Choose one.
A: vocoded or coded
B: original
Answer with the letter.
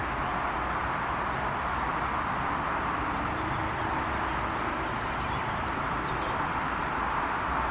B